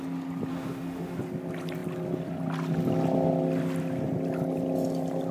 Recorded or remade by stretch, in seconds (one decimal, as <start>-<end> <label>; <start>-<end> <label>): 0.0-0.5 recorded; 0.5-1.2 remade; 1.2-5.3 recorded